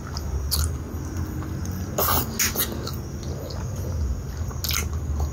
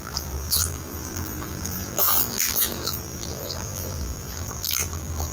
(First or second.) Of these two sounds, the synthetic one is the second